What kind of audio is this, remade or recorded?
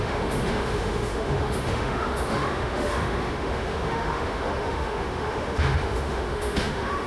remade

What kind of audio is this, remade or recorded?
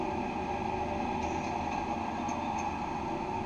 recorded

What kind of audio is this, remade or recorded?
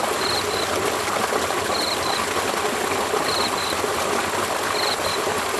recorded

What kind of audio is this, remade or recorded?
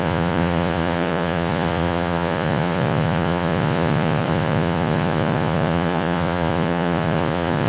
remade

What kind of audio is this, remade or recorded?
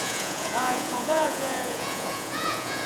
remade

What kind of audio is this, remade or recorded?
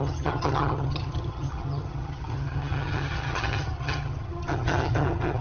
remade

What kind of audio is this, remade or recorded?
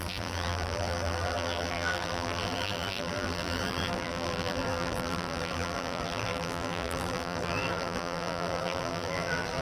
remade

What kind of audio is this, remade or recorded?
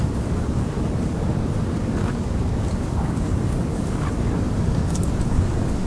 remade